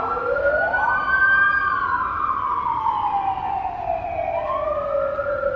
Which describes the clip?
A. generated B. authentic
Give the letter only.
B